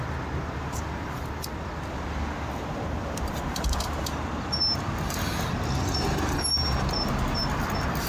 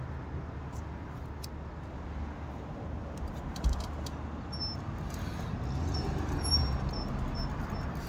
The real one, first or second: second